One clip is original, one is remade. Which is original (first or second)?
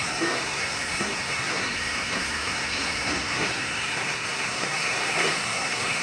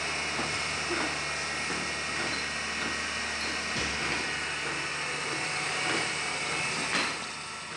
second